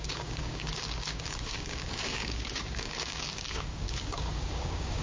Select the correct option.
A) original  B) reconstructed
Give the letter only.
B